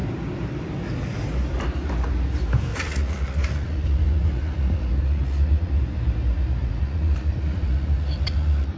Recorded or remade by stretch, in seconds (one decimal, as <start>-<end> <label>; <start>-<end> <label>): 0.0-2.7 recorded; 2.7-5.8 remade; 5.8-6.6 recorded; 6.6-8.8 remade